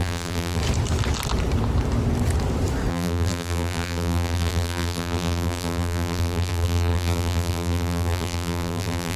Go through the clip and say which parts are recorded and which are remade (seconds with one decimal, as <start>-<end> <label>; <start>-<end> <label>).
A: 0.0-0.6 remade; 0.6-2.9 recorded; 2.9-9.2 remade